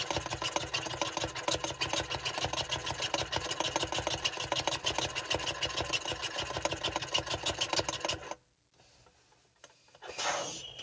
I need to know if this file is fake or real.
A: real